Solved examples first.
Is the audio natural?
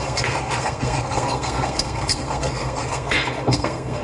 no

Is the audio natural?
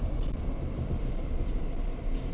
yes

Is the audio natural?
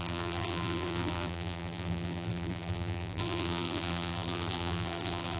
no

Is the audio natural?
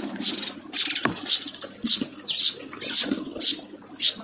no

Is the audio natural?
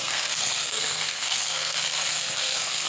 no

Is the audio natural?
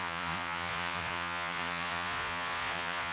no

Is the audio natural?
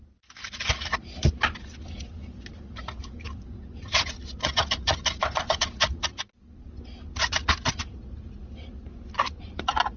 yes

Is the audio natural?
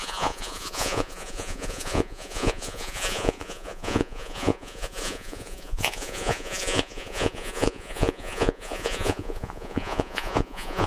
no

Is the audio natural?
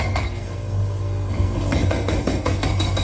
no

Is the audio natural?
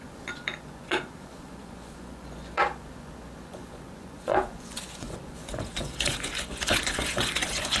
no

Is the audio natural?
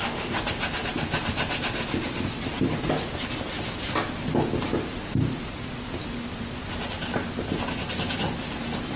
yes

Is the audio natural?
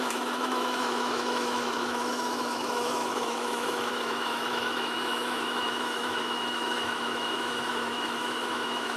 no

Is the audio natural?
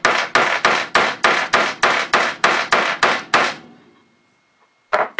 yes